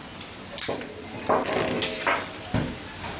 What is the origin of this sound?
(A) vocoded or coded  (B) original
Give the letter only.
B